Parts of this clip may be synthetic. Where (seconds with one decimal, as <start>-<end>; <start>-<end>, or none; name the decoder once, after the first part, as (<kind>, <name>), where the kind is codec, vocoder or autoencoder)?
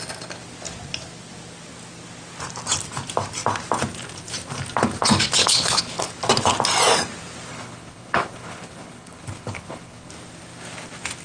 5.4-6.1 (codec, HILCodec); 7.5-10.1